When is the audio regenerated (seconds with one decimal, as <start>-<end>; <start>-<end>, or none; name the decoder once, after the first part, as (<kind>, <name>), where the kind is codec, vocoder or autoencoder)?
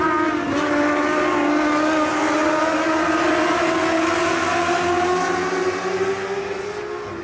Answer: none